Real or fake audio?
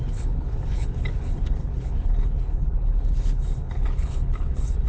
fake